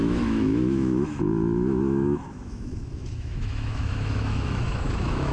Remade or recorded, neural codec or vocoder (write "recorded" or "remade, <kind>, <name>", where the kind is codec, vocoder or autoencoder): remade, autoencoder, DAC-VAE